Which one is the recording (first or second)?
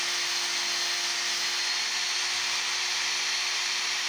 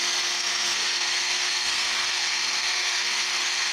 first